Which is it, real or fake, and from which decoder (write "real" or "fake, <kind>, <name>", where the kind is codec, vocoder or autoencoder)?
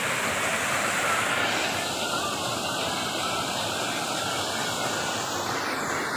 real